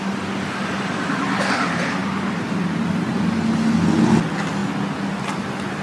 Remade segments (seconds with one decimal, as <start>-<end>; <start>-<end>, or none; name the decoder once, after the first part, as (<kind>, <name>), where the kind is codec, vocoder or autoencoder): none